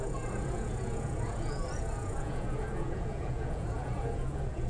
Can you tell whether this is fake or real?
fake